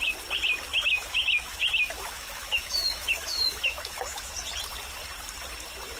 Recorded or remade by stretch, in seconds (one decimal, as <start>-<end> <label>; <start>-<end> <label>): 0.0-0.7 recorded; 0.7-4.3 remade; 4.3-6.0 recorded